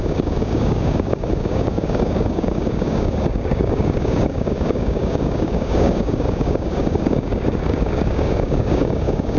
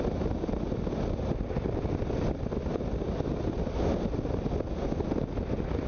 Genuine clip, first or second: second